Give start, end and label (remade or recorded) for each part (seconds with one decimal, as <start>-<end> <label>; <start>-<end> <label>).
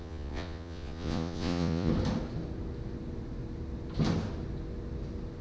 0.0-1.9 remade; 1.9-5.4 recorded